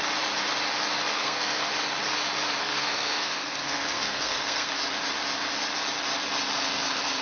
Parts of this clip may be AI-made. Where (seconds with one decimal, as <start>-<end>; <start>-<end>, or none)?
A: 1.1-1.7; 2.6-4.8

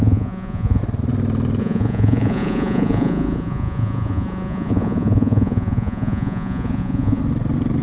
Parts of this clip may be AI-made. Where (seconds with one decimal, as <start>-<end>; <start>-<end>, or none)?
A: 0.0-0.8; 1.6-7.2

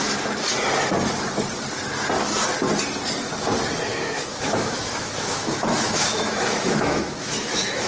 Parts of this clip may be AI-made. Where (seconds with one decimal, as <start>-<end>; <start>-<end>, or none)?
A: 3.9-7.9